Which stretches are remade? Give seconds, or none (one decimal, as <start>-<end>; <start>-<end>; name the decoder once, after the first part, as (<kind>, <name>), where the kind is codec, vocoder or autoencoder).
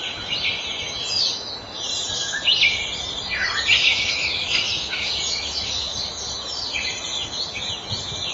3.8-5.1 (autoencoder, DAC-VAE)